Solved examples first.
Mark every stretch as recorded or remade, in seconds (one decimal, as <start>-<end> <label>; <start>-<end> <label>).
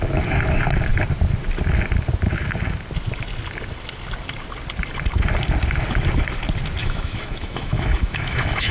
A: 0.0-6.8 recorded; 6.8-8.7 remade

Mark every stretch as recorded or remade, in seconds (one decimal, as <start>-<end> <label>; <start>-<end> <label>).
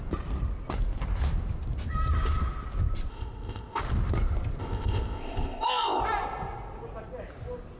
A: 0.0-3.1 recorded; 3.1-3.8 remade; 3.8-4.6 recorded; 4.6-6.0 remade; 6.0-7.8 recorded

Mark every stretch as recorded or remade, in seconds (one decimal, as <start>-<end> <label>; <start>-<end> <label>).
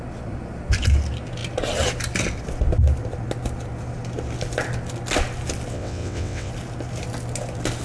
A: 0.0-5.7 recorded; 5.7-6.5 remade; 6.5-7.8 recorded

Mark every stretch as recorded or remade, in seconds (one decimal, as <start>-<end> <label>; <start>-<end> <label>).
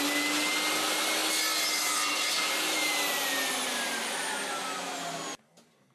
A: 0.0-5.9 recorded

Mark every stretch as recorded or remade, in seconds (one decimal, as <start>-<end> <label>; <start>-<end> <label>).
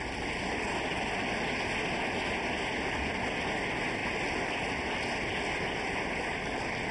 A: 0.0-6.9 recorded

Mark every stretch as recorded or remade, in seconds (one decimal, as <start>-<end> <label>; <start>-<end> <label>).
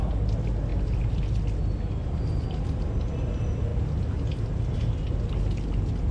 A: 0.0-6.1 recorded